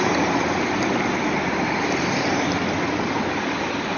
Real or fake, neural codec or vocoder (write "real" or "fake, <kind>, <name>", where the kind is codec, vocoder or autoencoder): real